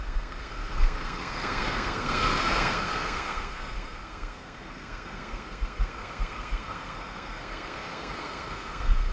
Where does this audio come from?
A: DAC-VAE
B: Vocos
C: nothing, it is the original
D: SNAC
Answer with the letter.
D